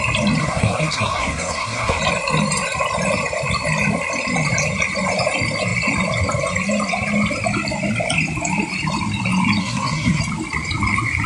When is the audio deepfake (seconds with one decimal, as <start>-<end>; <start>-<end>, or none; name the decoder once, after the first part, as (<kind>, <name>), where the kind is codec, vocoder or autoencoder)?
0.4-2.0 (codec, SNAC); 9.6-10.2